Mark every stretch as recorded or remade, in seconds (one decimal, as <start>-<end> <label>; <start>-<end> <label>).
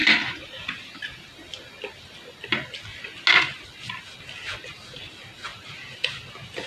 0.0-6.7 recorded